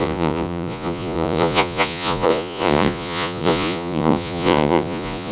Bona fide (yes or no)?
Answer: no